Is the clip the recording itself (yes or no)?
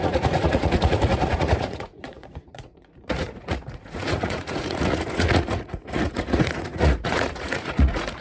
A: no